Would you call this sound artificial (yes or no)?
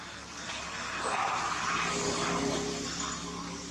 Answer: no